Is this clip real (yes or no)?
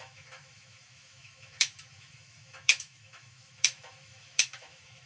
no